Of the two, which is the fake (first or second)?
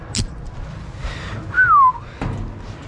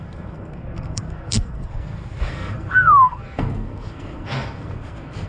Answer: second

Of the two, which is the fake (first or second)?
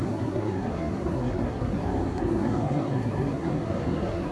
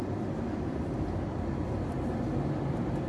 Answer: first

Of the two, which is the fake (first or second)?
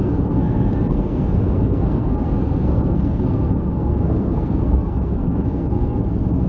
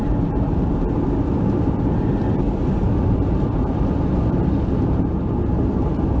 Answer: first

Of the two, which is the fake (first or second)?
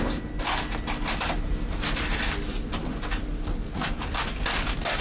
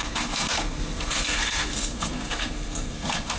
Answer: second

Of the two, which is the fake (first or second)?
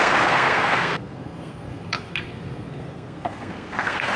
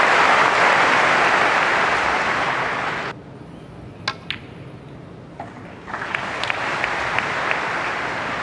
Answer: first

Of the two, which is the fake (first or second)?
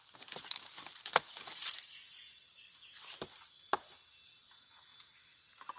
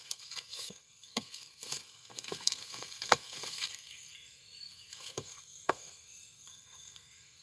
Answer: second